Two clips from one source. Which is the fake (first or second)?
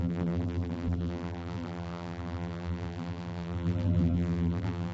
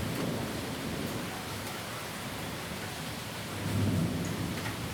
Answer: first